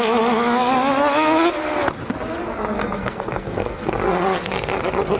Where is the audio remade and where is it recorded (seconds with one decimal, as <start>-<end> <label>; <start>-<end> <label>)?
0.0-2.8 recorded; 2.8-3.9 remade; 3.9-5.2 recorded